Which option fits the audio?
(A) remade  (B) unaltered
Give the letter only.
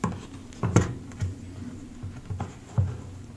B